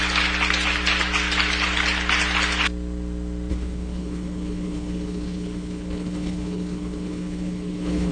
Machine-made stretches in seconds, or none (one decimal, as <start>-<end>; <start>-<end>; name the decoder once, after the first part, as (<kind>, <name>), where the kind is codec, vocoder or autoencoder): 3.5-8.1 (codec, HILCodec)